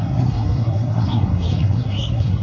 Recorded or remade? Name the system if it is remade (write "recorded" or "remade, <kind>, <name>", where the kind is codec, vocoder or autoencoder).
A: remade, codec, SNAC